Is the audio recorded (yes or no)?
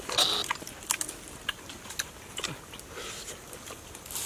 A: yes